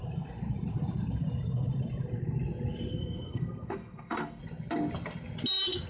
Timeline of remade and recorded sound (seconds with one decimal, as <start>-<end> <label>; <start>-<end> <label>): 0.0-2.9 recorded; 2.9-4.4 remade; 4.4-5.9 recorded